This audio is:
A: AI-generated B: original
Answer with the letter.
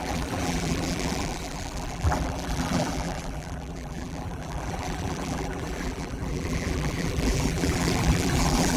A